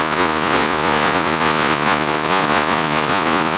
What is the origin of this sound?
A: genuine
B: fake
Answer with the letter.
B